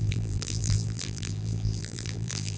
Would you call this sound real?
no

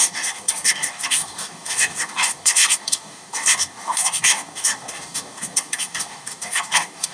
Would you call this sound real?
no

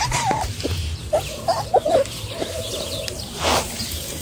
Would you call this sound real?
no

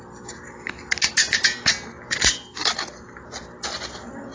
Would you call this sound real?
yes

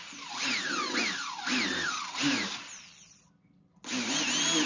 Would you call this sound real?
yes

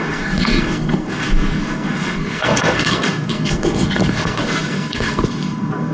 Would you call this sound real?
no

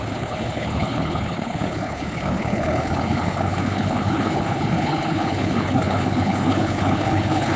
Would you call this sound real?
no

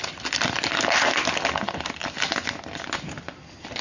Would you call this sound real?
yes